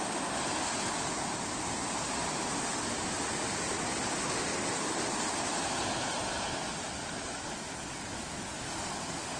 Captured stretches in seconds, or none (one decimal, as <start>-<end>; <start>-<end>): 0.0-9.4